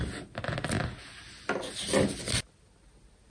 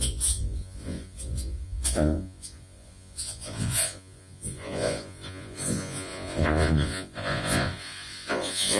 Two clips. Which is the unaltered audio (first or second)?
first